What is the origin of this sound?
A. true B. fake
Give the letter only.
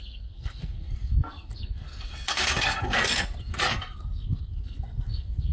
B